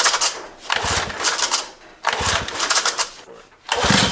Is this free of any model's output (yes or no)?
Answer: yes